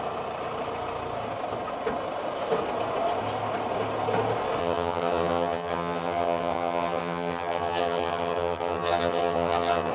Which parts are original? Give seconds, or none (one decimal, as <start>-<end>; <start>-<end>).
0.0-4.6